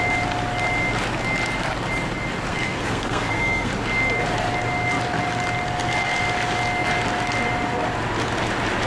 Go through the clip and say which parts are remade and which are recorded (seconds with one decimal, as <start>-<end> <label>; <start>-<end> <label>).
0.0-2.5 recorded; 2.5-3.7 remade; 3.7-8.9 recorded